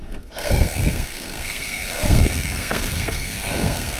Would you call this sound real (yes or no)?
no